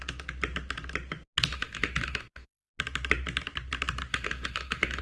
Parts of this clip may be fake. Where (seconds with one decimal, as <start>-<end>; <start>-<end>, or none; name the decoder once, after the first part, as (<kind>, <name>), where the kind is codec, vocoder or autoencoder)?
1.5-2.7 (autoencoder, DAC-VAE); 4.1-5.0